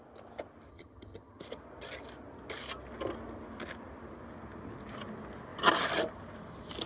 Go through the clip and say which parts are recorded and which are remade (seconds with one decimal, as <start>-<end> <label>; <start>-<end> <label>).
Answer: 0.0-0.7 recorded; 0.7-1.4 remade; 1.4-6.9 recorded